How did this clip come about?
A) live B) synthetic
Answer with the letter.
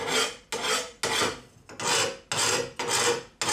A